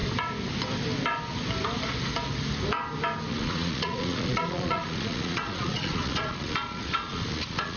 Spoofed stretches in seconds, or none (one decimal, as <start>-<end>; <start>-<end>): 3.3-7.8